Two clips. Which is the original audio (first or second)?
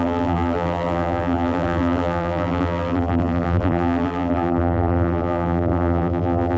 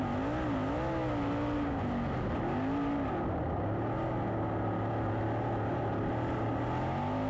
second